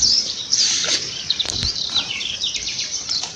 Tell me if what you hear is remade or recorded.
remade